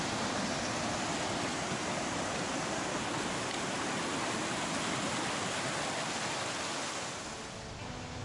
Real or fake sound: real